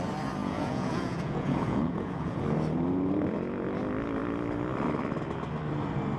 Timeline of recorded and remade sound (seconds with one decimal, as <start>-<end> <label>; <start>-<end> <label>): 0.0-0.4 recorded; 0.4-2.4 remade; 2.4-6.2 recorded